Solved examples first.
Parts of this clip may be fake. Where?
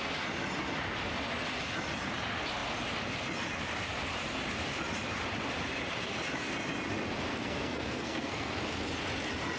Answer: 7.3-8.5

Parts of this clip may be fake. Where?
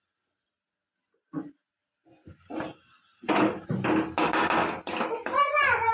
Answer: none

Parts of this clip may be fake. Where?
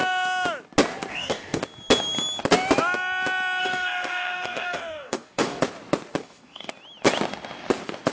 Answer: 1.1-1.6; 3.6-5.6; 6.2-6.7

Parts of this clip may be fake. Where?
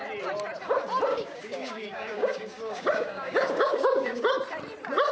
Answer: 1.1-4.2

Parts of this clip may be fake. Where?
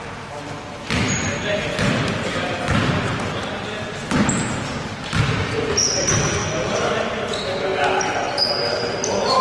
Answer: none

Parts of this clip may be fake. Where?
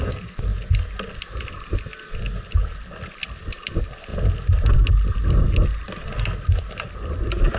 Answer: 0.0-0.5; 2.4-4.1; 6.6-7.6